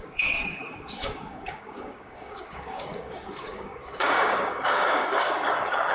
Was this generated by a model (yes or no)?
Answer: yes